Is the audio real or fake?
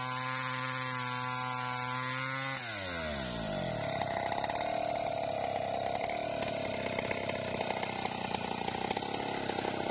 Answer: real